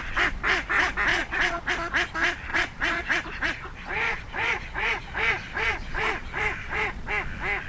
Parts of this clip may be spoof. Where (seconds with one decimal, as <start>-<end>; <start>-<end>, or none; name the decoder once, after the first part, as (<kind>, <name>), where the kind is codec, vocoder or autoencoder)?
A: 1.1-1.7 (vocoder, Vocos); 2.5-7.1